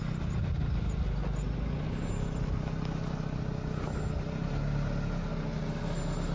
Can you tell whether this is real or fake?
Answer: real